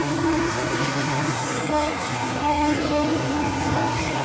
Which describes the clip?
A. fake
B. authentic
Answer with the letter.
A